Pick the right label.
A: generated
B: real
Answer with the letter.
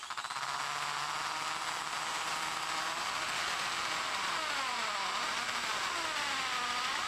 B